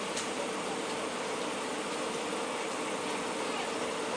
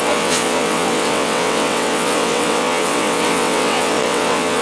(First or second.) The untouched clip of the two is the first